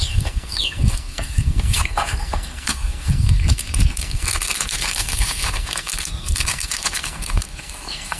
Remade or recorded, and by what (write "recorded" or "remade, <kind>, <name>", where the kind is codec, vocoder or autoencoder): remade, codec, SNAC